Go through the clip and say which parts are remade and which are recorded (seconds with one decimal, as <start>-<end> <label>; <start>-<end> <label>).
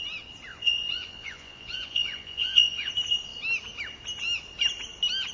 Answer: 0.0-0.5 recorded; 0.5-2.9 remade; 2.9-5.3 recorded